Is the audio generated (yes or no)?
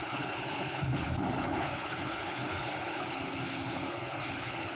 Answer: yes